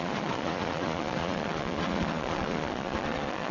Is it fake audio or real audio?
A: fake